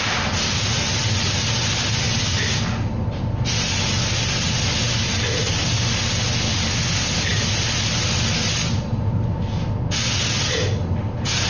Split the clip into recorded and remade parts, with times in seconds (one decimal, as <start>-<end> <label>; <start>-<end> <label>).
0.0-11.5 recorded